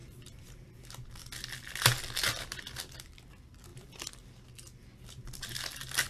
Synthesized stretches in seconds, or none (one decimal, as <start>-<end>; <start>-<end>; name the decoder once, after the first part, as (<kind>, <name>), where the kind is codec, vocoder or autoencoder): 0.0-0.7 (vocoder, BigVGAN v2); 3.7-4.5